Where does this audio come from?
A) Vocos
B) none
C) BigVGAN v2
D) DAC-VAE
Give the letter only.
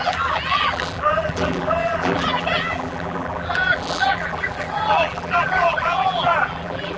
C